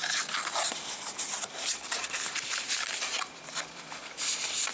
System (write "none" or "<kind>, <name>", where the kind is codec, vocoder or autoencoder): vocoder, BigVGAN v2